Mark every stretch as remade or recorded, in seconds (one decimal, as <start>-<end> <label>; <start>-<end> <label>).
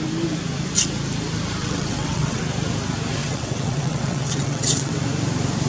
0.0-1.6 recorded; 1.6-2.4 remade; 2.4-3.2 recorded; 3.2-4.9 remade; 4.9-5.7 recorded